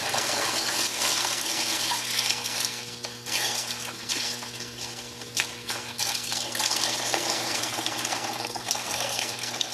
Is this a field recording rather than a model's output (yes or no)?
no